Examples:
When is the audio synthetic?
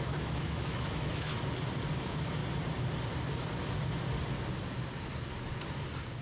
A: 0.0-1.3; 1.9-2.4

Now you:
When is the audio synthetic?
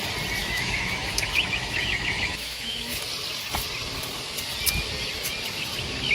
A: 0.4-3.0